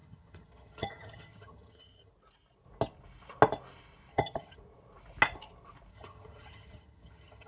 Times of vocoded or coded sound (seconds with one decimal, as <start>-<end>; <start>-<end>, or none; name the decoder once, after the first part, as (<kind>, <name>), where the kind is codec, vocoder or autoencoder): 0.0-2.1 (vocoder, HiFi-GAN); 4.1-4.6; 5.9-7.5